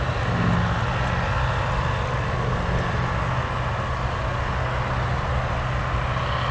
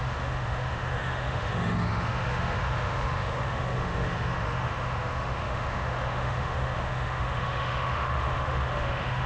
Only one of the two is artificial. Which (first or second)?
second